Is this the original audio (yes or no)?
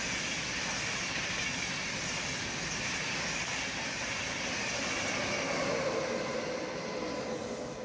yes